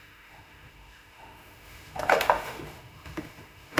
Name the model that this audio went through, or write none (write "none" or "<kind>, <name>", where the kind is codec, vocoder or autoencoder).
autoencoder, DAC-VAE